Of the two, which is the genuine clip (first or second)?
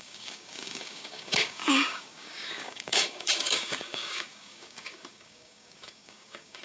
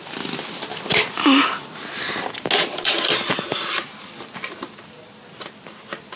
second